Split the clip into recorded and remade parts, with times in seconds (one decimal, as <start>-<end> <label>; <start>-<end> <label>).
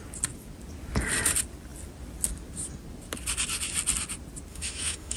0.0-4.5 recorded; 4.5-5.2 remade